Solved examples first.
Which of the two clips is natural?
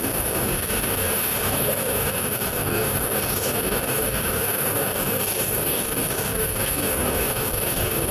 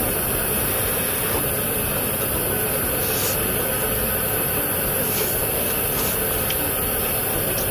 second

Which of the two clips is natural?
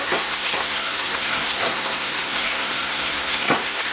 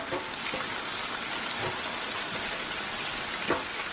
second